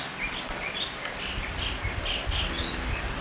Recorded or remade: recorded